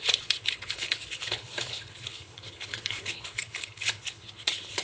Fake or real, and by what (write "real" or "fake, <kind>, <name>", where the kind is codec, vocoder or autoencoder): fake, codec, HILCodec